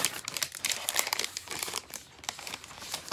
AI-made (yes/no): yes